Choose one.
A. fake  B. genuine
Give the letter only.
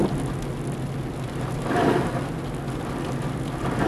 B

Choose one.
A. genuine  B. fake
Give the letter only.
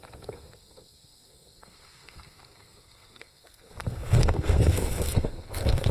B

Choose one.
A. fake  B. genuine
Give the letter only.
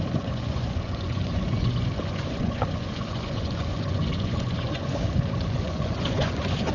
A